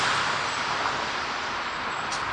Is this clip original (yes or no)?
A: yes